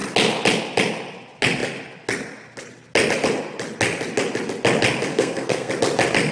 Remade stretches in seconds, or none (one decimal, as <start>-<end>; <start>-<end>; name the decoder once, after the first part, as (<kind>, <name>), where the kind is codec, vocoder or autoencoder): 5.1-5.7 (codec, SNAC)